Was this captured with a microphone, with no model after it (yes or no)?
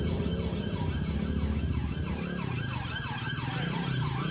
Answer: yes